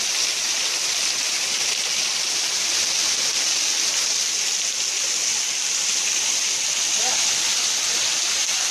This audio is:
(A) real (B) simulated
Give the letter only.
A